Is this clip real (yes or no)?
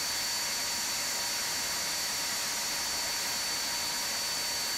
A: yes